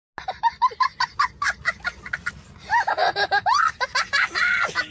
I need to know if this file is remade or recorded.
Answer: recorded